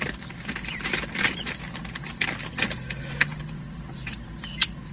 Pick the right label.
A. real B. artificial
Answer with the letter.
A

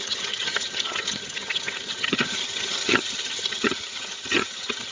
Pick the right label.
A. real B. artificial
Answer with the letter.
B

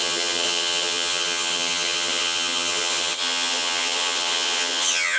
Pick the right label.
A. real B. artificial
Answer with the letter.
B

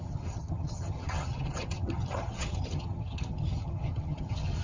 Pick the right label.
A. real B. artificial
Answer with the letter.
B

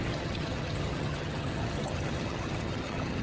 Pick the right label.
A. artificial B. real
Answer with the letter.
A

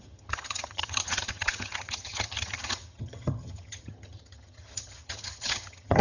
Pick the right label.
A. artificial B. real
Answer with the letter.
A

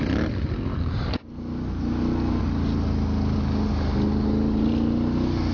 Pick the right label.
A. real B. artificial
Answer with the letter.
A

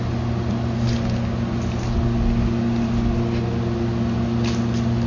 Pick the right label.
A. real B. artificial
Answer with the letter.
A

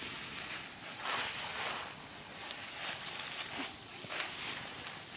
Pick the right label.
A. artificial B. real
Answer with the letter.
B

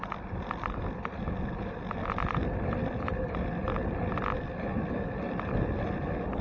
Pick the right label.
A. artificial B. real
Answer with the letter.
B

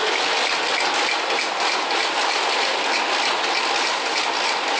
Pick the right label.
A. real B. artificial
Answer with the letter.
A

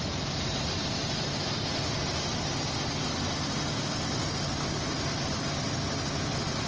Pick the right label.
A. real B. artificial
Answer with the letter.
A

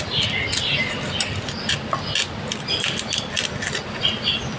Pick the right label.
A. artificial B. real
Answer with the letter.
B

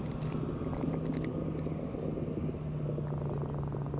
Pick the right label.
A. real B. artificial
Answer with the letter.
A